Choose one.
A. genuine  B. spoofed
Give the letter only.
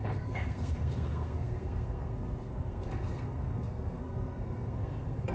B